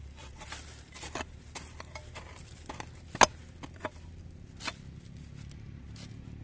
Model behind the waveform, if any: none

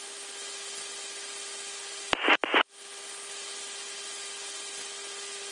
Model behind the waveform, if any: none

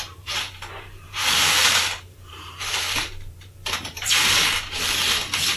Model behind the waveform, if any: vocoder, BigVGAN v2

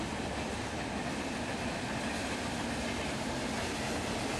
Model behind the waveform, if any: none